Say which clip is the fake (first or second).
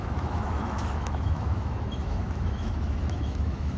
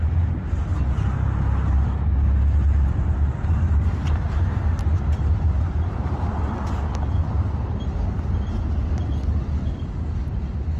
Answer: first